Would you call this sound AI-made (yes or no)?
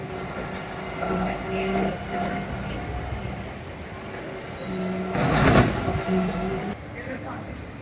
no